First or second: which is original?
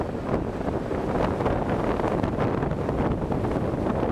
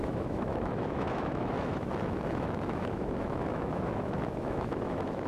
first